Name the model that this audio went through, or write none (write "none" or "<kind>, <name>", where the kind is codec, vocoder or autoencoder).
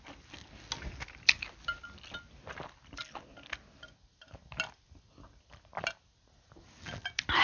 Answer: none